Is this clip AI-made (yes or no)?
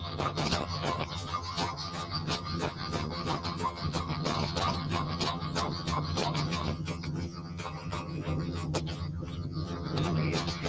yes